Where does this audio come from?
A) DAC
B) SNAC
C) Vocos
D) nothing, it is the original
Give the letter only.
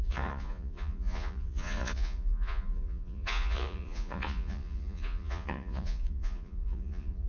C